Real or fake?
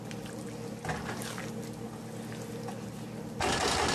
real